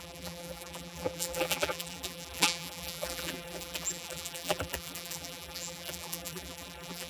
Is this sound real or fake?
fake